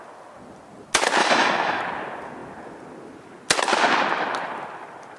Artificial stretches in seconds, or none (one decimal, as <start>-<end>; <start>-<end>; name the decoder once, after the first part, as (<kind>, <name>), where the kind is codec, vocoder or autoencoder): 1.2-1.8 (autoencoder, DAC-VAE)